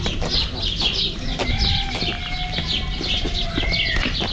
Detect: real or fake real